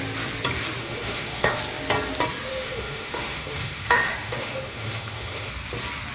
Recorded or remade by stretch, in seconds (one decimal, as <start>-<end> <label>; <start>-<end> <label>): 0.0-0.8 recorded; 0.8-1.6 remade; 1.6-2.5 recorded; 2.5-5.5 remade; 5.5-6.1 recorded